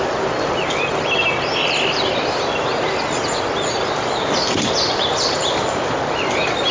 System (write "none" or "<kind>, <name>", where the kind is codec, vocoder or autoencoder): none